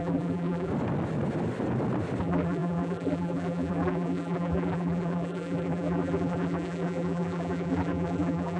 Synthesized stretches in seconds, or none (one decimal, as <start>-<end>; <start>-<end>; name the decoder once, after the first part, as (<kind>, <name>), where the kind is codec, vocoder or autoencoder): 0.0-0.7 (vocoder, BigVGAN v2); 2.2-8.6